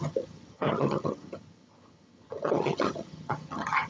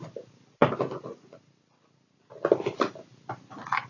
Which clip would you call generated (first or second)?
first